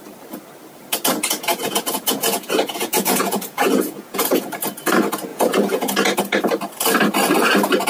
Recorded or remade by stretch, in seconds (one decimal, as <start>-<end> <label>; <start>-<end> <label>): 0.0-1.5 recorded; 1.5-4.5 remade; 4.5-5.3 recorded; 5.3-5.9 remade; 5.9-7.9 recorded